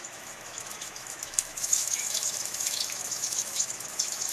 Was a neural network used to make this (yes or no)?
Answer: yes